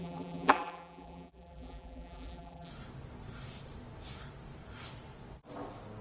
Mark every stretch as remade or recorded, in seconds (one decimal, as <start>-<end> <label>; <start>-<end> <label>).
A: 0.0-2.7 remade; 2.7-6.0 recorded